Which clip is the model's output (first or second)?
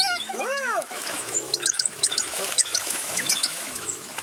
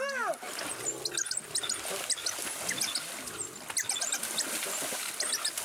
first